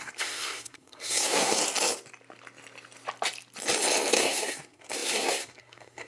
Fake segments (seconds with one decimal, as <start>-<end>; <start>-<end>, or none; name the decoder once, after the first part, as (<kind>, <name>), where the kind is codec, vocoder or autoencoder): 0.0-1.6 (codec, SNAC); 4.1-6.1